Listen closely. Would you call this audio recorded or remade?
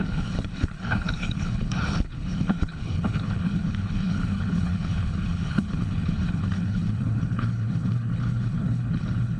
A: remade